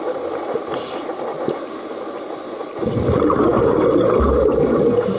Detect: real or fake real